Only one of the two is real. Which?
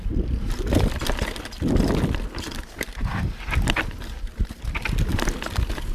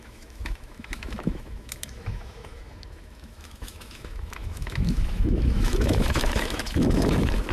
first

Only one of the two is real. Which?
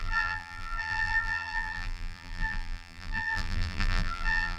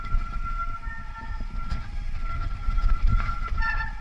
second